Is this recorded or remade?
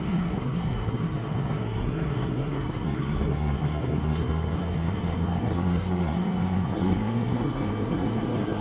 remade